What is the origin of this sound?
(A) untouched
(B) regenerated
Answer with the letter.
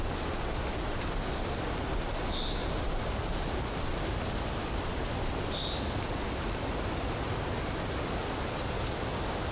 A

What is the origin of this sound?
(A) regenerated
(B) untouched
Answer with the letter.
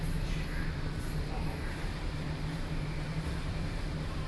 A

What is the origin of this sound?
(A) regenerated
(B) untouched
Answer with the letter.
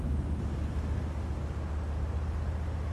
B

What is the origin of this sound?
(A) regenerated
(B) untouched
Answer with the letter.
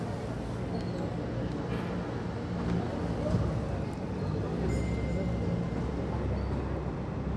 B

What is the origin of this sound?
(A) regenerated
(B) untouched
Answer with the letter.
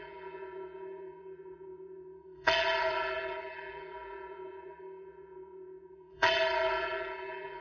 A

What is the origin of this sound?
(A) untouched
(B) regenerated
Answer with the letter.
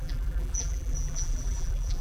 B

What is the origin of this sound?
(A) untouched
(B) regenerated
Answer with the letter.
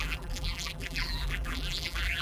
B